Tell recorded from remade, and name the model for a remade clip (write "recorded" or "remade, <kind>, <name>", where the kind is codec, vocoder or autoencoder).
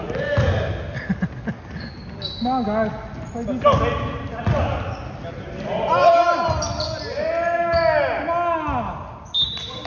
recorded